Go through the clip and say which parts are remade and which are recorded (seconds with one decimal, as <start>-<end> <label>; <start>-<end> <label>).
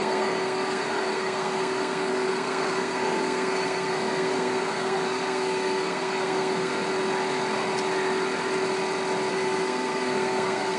0.0-6.7 remade; 6.7-9.3 recorded; 9.3-10.8 remade